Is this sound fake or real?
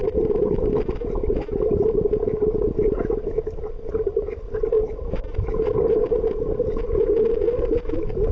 fake